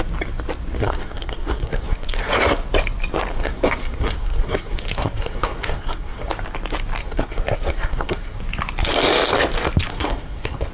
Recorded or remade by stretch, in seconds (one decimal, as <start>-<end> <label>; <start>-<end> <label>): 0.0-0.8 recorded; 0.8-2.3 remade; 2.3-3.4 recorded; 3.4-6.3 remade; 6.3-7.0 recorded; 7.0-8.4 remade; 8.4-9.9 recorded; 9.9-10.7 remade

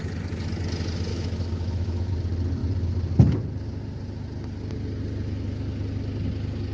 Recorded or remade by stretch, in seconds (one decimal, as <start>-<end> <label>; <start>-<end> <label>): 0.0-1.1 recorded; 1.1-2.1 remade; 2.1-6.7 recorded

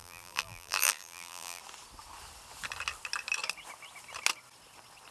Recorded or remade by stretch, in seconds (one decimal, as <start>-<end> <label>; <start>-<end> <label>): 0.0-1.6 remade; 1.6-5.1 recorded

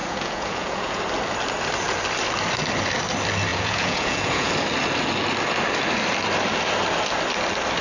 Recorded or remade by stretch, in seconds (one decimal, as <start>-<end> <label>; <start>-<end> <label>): 0.0-1.0 remade; 1.0-3.5 recorded; 3.5-4.5 remade; 4.5-7.8 recorded

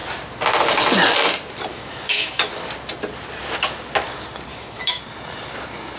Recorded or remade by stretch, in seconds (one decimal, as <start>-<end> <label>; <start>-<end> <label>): 0.0-1.7 recorded; 1.7-2.5 remade; 2.5-4.5 recorded; 4.5-5.0 remade; 5.0-6.0 recorded

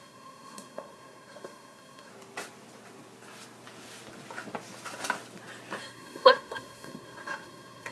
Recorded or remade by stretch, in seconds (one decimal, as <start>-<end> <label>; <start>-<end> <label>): 0.0-2.1 remade; 2.1-5.8 recorded; 5.8-7.9 remade

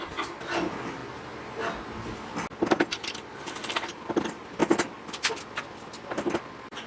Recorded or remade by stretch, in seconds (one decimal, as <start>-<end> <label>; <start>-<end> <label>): 0.0-1.0 remade; 1.0-3.4 recorded; 3.4-4.6 remade; 4.6-5.4 recorded; 5.4-6.9 remade